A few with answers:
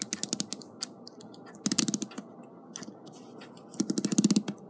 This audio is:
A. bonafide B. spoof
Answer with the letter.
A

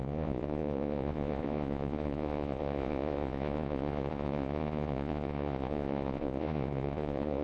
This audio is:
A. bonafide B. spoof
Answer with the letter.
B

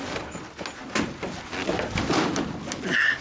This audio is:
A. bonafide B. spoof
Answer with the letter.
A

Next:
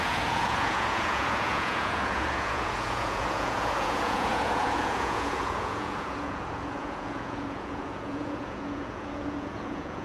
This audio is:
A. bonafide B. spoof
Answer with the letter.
B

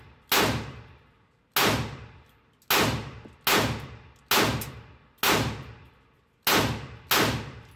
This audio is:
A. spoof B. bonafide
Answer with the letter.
B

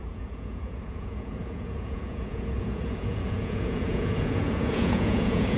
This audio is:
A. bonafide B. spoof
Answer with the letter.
B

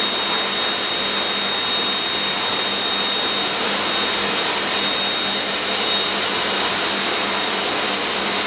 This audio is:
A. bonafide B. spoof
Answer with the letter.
A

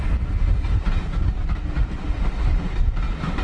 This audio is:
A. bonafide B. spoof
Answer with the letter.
A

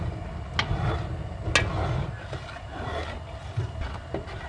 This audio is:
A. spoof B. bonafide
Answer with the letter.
B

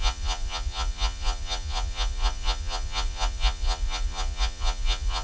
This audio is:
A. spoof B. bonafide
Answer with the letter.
A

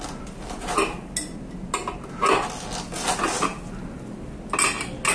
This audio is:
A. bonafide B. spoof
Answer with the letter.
A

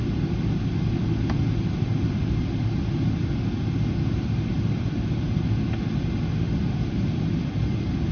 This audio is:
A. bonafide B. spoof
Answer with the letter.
A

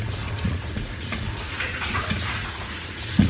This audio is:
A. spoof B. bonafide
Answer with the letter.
A